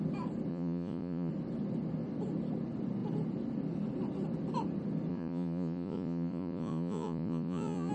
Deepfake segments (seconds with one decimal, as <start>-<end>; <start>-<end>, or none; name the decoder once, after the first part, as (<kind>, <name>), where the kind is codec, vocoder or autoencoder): 0.5-1.3 (vocoder, Vocos); 5.1-7.9